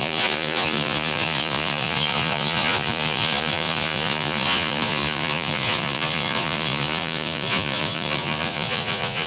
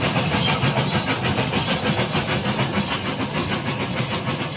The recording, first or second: second